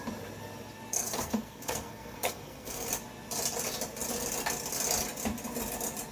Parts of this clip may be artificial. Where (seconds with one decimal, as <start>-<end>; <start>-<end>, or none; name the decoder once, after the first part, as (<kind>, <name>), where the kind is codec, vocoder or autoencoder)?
0.9-2.9 (codec, SNAC)